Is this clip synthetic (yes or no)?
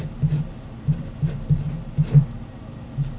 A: no